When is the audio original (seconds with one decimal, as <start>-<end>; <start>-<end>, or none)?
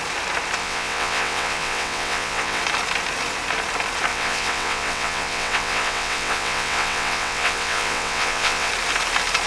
0.0-0.6; 2.6-4.1; 8.7-9.5